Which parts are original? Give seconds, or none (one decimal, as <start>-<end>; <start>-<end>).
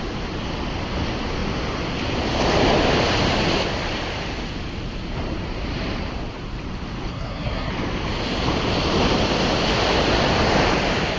0.0-7.1; 7.7-11.2